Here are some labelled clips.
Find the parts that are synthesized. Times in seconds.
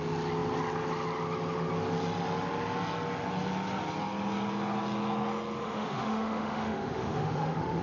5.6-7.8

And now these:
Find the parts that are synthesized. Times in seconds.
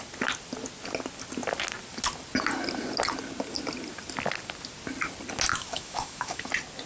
5.5-6.5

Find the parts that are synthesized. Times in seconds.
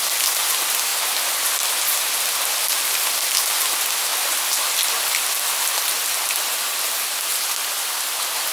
none